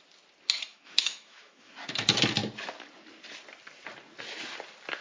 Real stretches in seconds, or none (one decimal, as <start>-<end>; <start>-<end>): 0.0-0.7; 1.7-5.0